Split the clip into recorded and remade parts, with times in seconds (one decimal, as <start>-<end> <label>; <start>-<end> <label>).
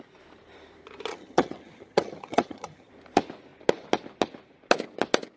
0.0-1.1 recorded; 1.1-2.9 remade; 2.9-5.4 recorded